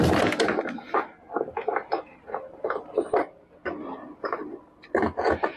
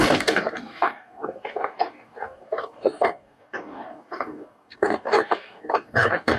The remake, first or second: second